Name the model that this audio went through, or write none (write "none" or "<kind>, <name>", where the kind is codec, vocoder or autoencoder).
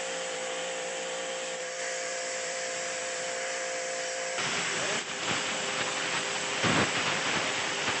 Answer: vocoder, BigVGAN v2